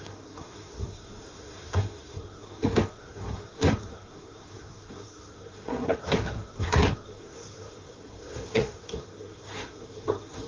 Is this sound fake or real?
fake